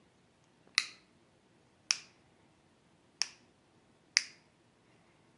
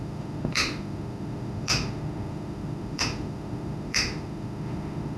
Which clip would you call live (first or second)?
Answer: first